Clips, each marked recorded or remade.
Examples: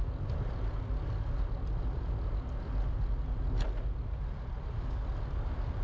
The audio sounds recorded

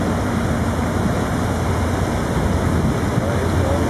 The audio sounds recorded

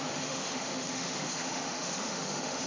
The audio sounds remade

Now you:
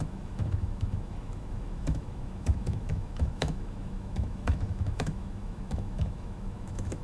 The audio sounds remade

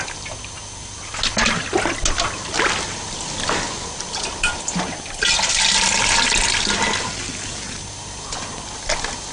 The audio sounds recorded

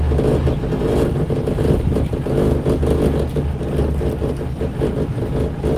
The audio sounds recorded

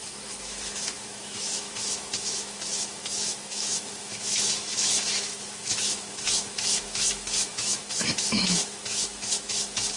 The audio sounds remade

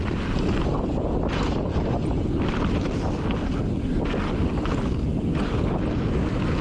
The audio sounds recorded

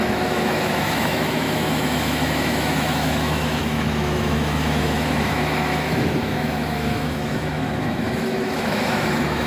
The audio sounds remade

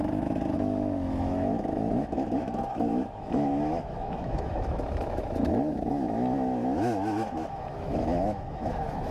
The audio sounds remade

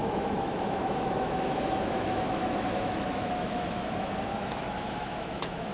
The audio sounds remade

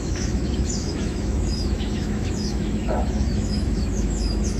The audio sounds remade